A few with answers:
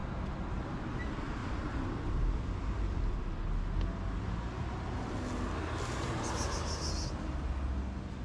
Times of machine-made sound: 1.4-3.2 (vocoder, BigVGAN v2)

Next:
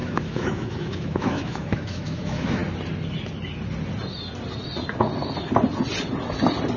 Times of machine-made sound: 0.0-2.6 (autoencoder, DAC-VAE)

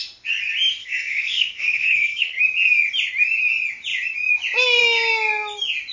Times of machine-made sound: 0.8-2.4 (codec, SNAC)

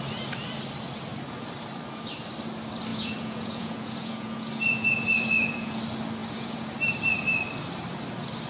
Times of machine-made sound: 2.9-5.8 (vocoder, Vocos); 6.2-6.7